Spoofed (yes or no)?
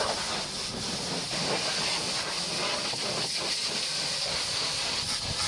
no